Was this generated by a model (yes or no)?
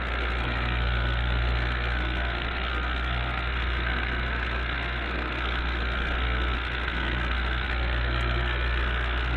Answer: yes